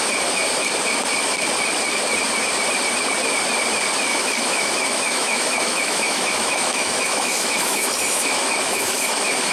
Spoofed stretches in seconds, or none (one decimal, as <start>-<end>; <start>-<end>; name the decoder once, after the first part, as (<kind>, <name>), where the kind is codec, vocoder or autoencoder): 4.1-9.5 (autoencoder, DAC-VAE)